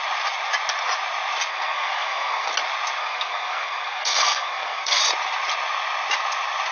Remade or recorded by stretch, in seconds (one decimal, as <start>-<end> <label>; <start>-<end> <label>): 0.0-1.5 recorded; 1.5-2.5 remade; 2.5-3.0 recorded; 3.0-5.0 remade; 5.0-6.7 recorded